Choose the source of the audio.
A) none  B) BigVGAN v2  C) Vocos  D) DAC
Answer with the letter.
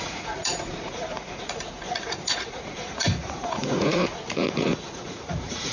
C